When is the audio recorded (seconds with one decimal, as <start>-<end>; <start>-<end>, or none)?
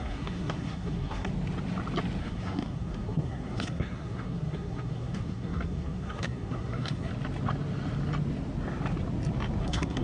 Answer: 1.3-2.2; 7.1-9.6